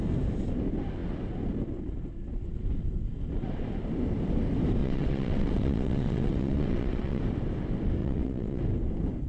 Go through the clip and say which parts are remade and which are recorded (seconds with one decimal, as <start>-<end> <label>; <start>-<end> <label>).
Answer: 0.0-4.8 recorded; 4.8-7.2 remade; 7.2-8.0 recorded; 8.0-8.6 remade; 8.6-9.3 recorded